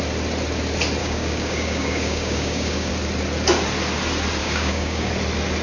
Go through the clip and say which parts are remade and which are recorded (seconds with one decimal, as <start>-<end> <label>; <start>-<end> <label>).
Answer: 0.0-1.0 recorded; 1.0-2.9 remade; 2.9-4.4 recorded; 4.4-5.1 remade; 5.1-5.6 recorded